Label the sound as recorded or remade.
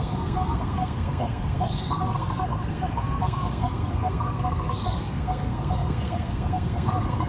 remade